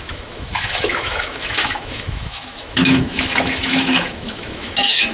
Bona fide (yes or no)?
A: no